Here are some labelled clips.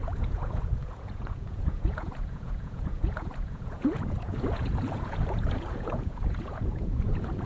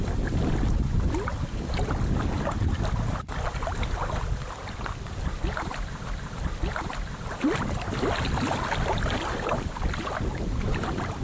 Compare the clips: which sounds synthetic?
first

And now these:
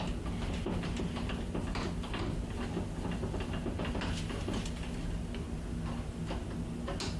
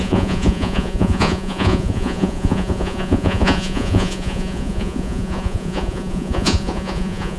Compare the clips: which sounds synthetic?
second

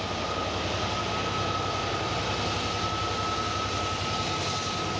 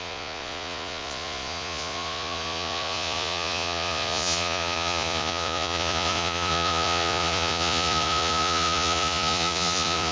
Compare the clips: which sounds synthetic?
second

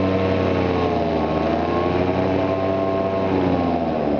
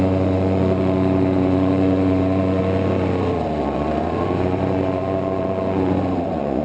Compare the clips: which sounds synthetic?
second